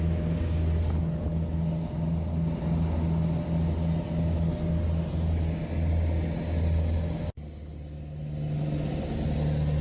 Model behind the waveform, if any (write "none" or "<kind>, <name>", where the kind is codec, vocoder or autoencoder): none